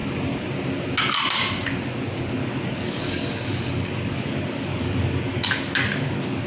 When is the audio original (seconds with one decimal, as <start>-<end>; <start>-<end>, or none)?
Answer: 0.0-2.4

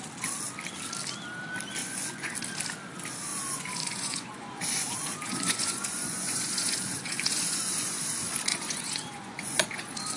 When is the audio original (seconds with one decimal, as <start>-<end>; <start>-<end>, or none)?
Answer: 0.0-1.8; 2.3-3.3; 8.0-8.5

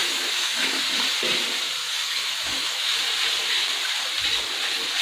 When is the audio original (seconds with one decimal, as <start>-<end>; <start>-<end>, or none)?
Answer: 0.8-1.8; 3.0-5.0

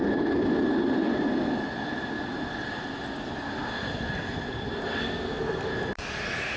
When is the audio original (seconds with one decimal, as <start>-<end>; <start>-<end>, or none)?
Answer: 0.0-5.0; 5.7-6.6